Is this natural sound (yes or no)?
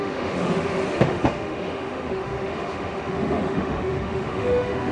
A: no